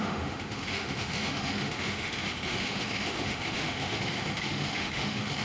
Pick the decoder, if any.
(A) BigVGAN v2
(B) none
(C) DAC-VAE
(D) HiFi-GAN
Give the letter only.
C